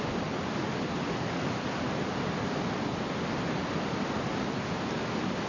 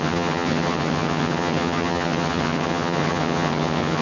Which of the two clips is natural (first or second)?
first